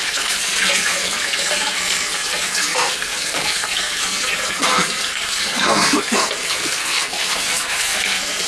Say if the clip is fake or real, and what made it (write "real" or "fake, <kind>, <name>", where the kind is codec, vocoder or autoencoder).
fake, codec, SNAC